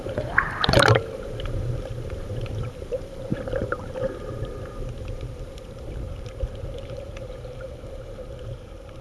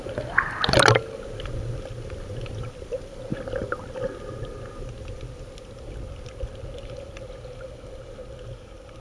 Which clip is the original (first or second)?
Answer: second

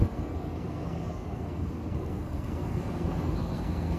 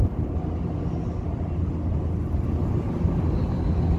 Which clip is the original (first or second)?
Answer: second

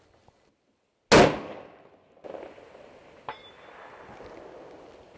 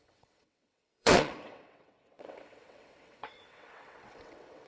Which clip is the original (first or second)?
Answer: first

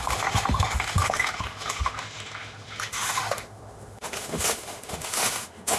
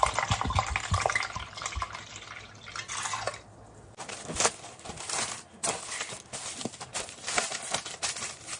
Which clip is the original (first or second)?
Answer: second